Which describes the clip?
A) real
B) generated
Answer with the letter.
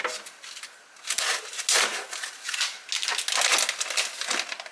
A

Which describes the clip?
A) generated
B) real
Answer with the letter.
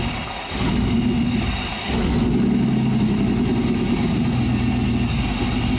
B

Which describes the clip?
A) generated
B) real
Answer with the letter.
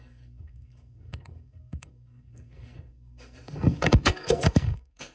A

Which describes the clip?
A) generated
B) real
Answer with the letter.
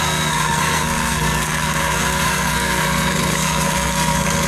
A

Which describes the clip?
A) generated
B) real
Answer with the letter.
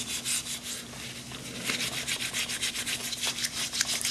B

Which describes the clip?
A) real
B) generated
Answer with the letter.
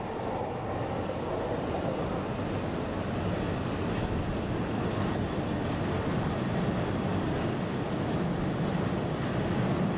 A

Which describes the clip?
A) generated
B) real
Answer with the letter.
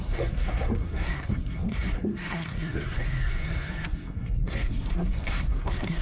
A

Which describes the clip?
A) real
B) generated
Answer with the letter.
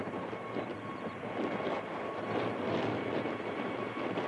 A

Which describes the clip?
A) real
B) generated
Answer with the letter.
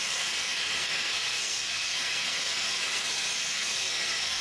B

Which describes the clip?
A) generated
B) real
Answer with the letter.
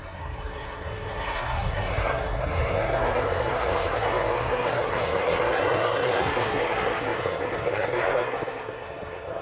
A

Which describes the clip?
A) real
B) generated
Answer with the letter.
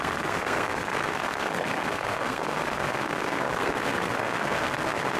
B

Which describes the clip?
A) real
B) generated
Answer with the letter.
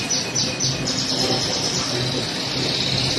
A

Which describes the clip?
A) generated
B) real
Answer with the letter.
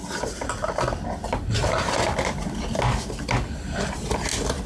B